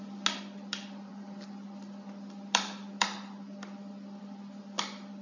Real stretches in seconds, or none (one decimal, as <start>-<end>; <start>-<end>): 0.0-5.2

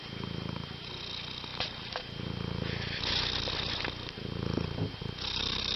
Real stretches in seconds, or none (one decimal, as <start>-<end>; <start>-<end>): 0.0-5.8

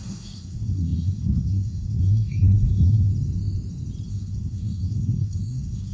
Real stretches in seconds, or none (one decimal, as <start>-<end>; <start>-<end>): 3.1-4.1

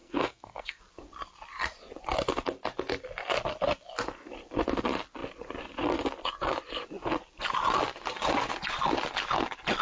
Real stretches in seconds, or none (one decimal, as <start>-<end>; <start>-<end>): 0.8-9.8

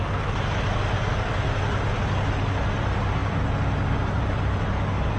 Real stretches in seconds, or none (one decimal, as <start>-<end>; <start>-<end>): 0.0-5.2

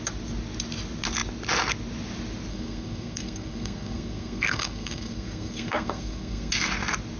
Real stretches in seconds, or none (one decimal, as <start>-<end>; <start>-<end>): 0.0-2.5; 6.5-7.2